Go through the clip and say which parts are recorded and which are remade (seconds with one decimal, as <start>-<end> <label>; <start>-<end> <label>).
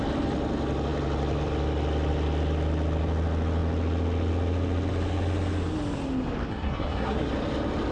0.0-6.5 recorded; 6.5-7.3 remade; 7.3-7.9 recorded